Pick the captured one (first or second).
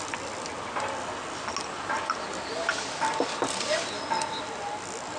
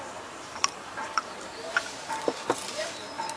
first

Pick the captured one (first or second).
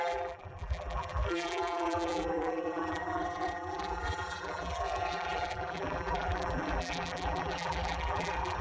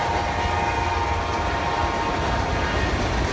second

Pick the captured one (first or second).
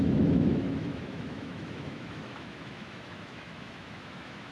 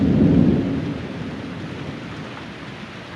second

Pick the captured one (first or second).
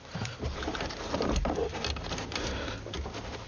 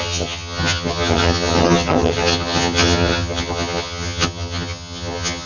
first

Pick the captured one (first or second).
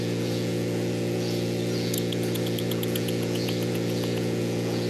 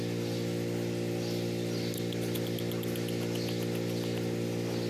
second